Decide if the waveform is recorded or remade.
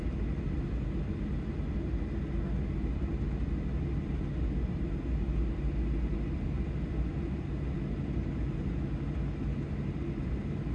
recorded